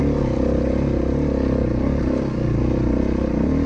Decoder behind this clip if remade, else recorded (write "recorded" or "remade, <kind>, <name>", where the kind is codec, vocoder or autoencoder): recorded